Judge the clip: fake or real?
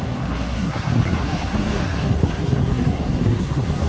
fake